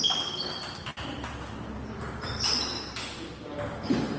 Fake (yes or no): no